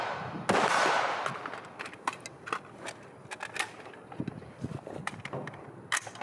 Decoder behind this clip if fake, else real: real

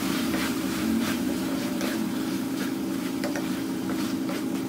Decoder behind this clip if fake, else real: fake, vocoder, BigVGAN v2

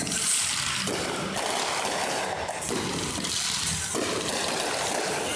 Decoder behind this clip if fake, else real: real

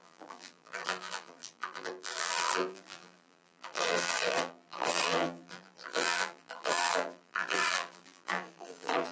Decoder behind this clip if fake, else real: fake, vocoder, BigVGAN v2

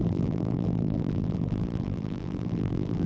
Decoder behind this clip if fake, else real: fake, vocoder, BigVGAN v2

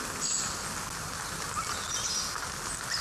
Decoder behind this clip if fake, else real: real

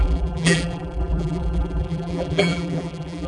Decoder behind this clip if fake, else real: fake, vocoder, BigVGAN v2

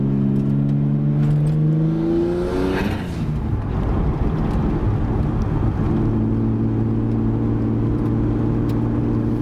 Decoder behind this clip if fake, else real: real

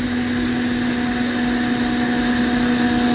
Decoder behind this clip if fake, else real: real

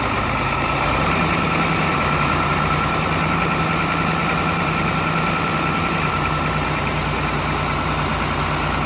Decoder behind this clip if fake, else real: fake, vocoder, BigVGAN v2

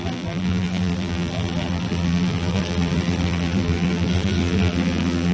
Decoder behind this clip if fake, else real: fake, vocoder, BigVGAN v2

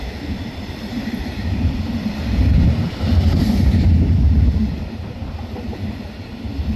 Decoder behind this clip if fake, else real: fake, vocoder, BigVGAN v2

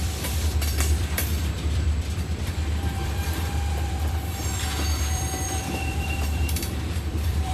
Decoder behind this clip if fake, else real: fake, vocoder, BigVGAN v2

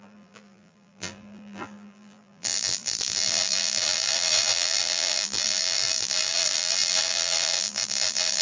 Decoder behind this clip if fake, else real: fake, vocoder, BigVGAN v2